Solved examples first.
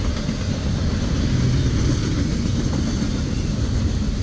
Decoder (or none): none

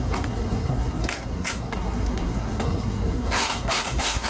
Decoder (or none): codec, SNAC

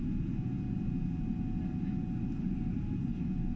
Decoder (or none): none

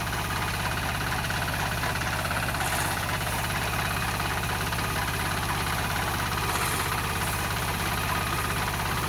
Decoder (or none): none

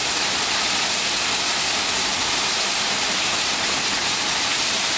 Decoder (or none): none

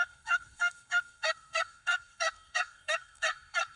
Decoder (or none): codec, SNAC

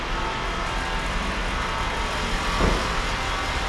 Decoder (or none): none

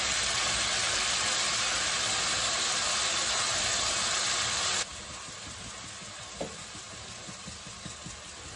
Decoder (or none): none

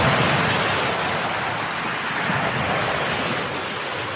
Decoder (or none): none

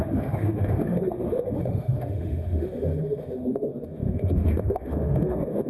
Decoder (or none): autoencoder, DAC-VAE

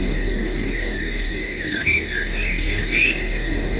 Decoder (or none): codec, DAC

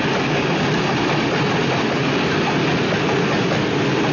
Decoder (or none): none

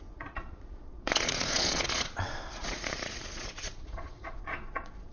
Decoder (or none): vocoder, Vocos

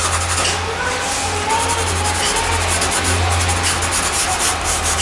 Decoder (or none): none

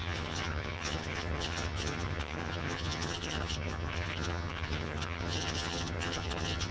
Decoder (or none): vocoder, HiFi-GAN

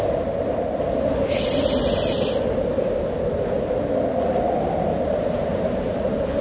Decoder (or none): none